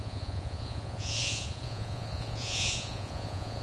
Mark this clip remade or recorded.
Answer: remade